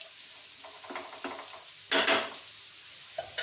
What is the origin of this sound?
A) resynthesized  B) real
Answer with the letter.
B